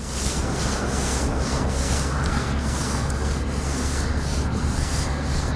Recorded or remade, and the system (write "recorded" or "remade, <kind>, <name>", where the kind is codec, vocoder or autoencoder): remade, codec, SNAC